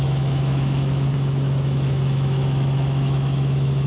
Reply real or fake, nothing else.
fake